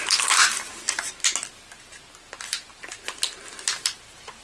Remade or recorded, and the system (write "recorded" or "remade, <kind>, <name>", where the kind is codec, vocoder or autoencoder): recorded